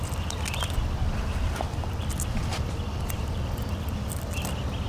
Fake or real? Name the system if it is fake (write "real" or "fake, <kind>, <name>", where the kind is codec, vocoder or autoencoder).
real